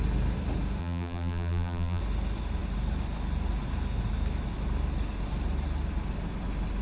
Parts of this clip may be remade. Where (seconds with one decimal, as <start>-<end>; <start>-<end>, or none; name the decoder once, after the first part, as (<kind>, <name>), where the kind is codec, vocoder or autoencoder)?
0.8-2.0 (vocoder, BigVGAN v2)